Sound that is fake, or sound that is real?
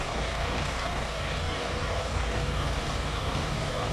fake